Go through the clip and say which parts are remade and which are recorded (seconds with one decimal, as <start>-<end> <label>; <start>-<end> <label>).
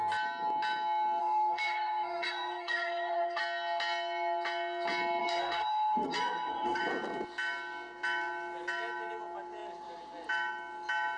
0.0-1.2 recorded; 1.2-3.4 remade; 3.4-5.2 recorded; 5.2-6.8 remade; 6.8-11.2 recorded